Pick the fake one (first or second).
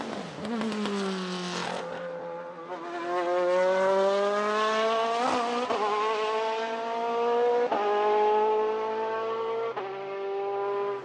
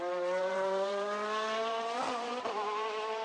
second